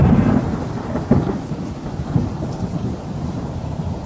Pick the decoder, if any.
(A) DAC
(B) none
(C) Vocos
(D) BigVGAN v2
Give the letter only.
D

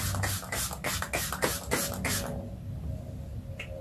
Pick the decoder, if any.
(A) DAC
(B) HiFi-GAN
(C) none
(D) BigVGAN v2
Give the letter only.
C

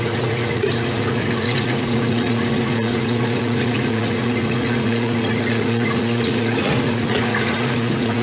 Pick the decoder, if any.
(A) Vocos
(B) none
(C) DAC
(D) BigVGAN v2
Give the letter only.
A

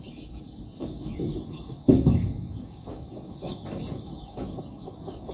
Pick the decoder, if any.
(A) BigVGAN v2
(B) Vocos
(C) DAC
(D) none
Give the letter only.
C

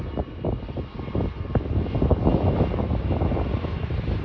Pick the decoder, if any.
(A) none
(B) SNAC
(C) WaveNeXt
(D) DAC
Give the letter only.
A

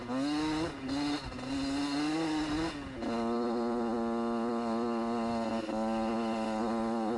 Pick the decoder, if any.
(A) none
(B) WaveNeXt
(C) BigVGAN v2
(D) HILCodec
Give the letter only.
A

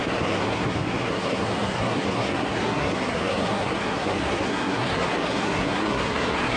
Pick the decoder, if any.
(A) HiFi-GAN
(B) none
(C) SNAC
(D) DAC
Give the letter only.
C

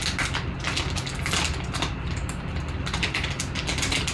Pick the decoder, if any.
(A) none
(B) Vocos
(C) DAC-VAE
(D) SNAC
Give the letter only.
A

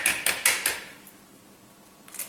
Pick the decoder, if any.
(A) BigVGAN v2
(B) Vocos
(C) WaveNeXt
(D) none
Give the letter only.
D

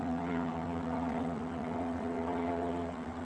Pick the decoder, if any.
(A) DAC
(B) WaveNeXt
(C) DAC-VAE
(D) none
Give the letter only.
B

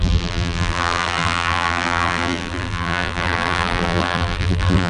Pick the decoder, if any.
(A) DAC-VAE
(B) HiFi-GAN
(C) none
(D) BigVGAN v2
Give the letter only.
D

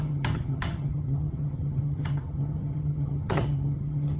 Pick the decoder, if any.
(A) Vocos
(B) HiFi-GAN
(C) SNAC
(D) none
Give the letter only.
B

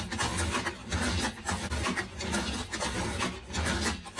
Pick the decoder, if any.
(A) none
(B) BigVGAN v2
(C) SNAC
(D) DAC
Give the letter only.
A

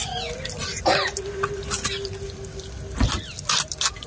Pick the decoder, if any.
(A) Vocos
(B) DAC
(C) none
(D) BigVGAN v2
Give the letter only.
C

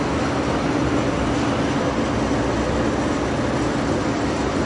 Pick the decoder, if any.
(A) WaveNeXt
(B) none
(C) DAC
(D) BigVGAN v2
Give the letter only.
B